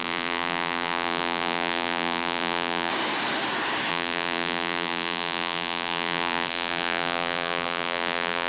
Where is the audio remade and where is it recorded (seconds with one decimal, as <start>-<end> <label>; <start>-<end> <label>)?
0.0-2.9 remade; 2.9-3.9 recorded; 3.9-8.5 remade